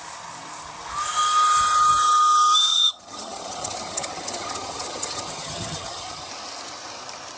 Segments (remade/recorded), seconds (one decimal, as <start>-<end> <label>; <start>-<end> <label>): 0.0-2.7 recorded; 2.7-6.3 remade; 6.3-7.4 recorded